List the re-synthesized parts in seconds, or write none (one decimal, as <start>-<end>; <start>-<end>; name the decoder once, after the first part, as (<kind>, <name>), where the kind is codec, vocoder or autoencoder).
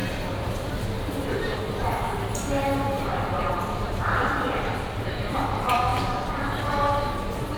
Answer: 1.3-5.9 (vocoder, BigVGAN v2)